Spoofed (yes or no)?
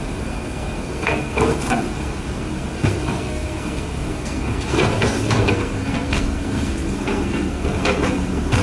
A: yes